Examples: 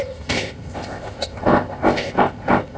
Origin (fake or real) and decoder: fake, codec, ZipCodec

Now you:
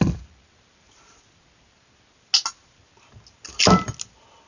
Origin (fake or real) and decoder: real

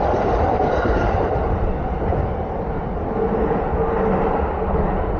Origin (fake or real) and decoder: real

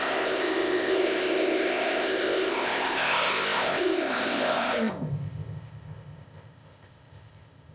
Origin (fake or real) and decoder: fake, codec, ZipCodec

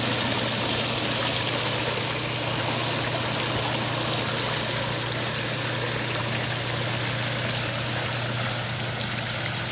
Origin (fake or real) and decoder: real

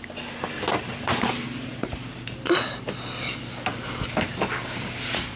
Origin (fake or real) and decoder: real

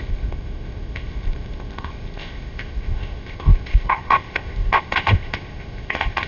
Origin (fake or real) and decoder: fake, codec, ZipCodec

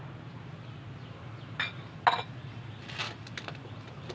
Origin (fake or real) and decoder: real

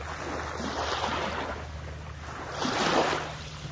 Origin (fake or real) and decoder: real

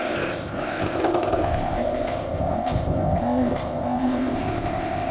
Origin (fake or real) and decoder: fake, codec, ZipCodec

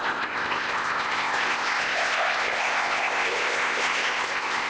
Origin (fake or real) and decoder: fake, codec, ZipCodec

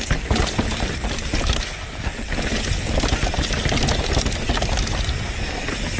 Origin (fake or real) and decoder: real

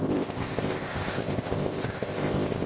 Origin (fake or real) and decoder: fake, codec, ZipCodec